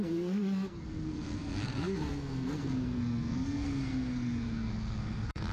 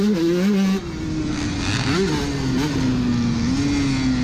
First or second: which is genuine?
second